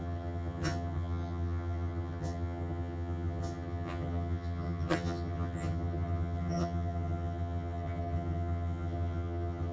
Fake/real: fake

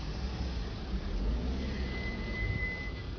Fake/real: real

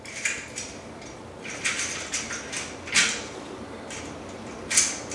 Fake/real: real